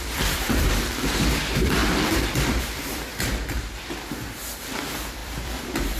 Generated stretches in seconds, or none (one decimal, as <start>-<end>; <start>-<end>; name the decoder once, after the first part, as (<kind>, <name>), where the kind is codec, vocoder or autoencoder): 0.0-6.0 (vocoder, BigVGAN v2)